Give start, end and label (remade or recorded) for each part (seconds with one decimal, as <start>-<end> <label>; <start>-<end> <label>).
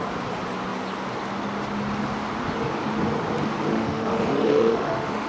0.0-3.7 recorded; 3.7-5.3 remade